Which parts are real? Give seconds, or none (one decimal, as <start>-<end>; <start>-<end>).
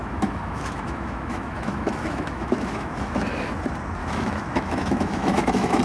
3.5-4.0